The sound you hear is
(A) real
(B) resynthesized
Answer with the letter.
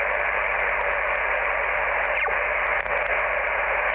A